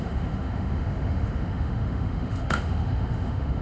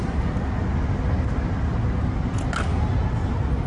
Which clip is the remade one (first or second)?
first